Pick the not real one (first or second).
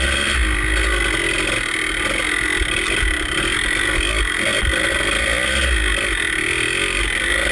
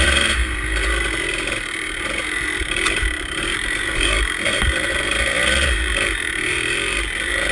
second